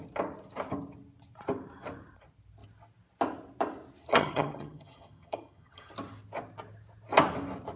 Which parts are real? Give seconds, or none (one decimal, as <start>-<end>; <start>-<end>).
0.0-4.1; 5.9-7.8